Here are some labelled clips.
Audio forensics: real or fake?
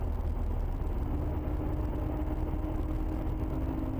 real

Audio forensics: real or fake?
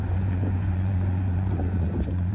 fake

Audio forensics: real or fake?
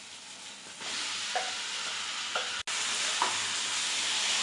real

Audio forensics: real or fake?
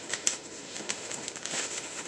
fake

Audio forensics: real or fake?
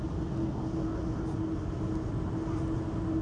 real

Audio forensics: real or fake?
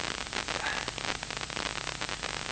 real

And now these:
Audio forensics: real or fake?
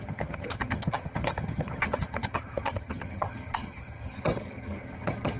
fake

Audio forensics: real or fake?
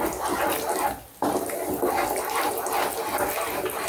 real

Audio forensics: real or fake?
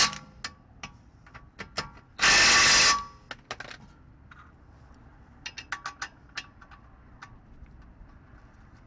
real